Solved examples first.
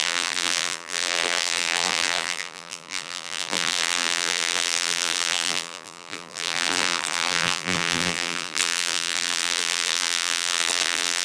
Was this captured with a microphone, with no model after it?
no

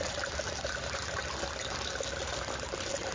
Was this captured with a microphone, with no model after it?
yes